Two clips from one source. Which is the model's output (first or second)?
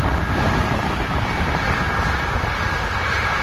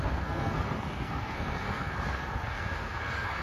second